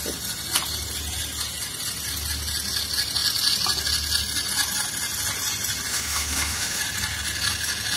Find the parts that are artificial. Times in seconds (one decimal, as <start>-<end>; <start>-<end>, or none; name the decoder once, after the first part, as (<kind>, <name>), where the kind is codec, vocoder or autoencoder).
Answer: 5.9-6.8 (autoencoder, DAC-VAE)